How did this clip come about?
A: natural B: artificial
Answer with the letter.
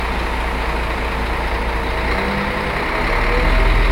A